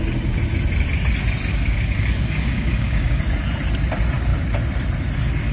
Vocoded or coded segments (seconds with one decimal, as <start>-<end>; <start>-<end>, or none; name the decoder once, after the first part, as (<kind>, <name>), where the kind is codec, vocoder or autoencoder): 1.5-3.2 (codec, DAC)